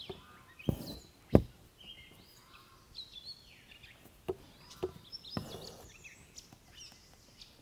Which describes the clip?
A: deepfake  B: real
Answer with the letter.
B